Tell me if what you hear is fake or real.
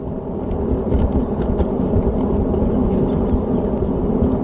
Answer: real